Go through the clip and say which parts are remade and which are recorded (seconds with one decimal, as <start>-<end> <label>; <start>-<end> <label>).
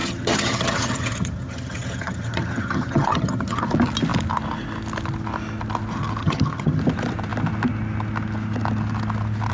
0.0-3.6 remade; 3.6-6.2 recorded; 6.2-6.8 remade; 6.8-9.5 recorded